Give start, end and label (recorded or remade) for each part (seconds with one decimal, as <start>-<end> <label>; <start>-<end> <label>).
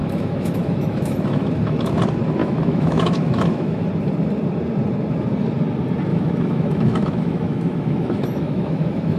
0.0-1.9 remade; 1.9-2.4 recorded; 2.4-3.9 remade; 3.9-6.1 recorded; 6.1-9.2 remade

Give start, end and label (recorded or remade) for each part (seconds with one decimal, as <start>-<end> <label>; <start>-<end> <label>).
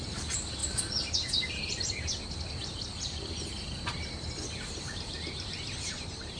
0.0-6.4 recorded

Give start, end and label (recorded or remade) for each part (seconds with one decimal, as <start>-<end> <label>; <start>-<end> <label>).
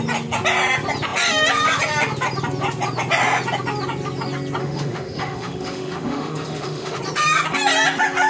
0.0-4.6 recorded; 4.6-7.0 remade; 7.0-8.3 recorded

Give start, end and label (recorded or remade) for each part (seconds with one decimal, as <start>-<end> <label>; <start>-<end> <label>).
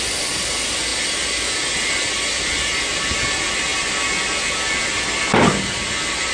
0.0-6.3 recorded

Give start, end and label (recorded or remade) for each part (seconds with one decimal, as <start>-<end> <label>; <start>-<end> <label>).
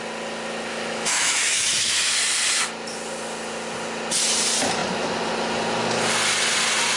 0.0-0.7 recorded; 0.7-2.1 remade; 2.1-7.0 recorded